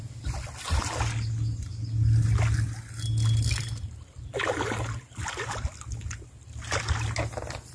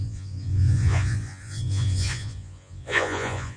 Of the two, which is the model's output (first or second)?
second